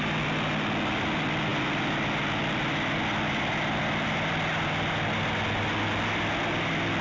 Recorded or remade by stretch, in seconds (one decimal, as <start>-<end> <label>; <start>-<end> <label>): 0.0-7.0 recorded